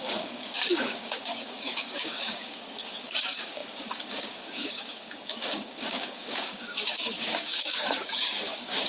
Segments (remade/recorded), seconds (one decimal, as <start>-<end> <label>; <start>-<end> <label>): 0.0-8.9 remade